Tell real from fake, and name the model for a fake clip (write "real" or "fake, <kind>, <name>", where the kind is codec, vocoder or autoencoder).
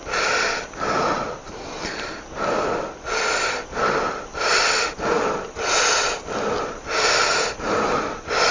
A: real